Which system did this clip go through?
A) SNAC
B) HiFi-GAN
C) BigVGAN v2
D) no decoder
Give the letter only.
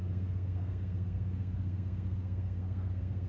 A